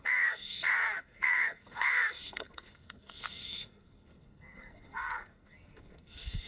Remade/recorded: remade